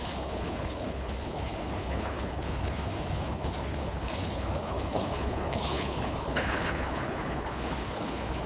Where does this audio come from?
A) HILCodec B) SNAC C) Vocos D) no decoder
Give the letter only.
A